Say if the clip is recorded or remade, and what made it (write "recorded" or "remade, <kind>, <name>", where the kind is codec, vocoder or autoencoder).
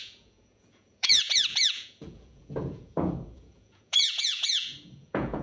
remade, vocoder, Vocos